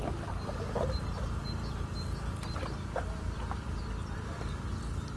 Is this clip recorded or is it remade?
recorded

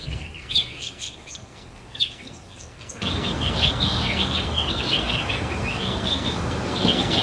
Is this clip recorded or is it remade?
remade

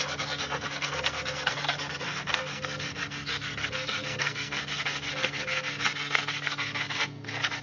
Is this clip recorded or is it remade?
remade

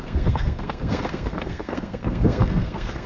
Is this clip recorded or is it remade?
remade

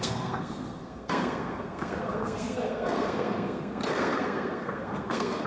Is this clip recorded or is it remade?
remade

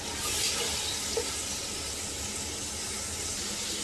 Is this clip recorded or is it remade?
recorded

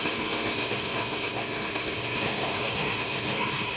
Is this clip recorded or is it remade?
remade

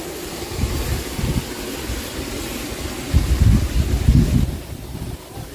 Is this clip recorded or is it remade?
recorded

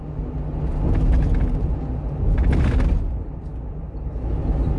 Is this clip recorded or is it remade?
recorded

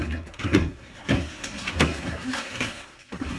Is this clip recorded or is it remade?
remade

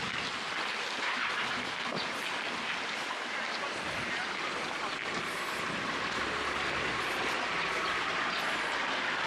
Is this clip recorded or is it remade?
recorded